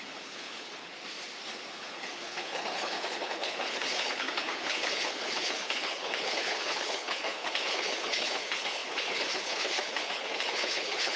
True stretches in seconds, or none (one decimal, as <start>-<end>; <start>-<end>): 0.9-1.7